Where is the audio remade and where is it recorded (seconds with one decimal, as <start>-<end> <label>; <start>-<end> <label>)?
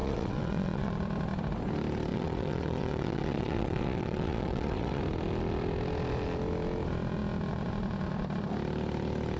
0.0-0.9 remade; 0.9-2.1 recorded; 2.1-5.0 remade; 5.0-9.4 recorded